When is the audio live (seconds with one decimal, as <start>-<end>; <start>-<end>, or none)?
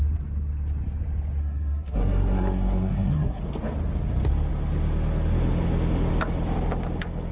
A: 0.0-1.4; 3.4-7.3